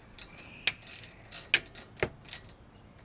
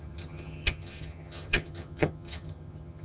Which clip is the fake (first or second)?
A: second